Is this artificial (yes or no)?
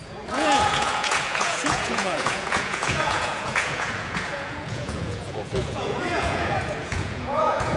yes